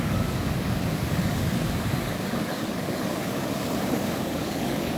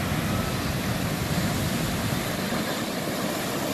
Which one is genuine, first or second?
second